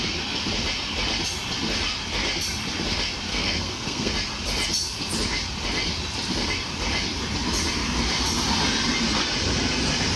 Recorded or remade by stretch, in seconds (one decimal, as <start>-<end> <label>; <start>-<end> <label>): 0.0-3.3 recorded; 3.3-4.1 remade; 4.1-10.2 recorded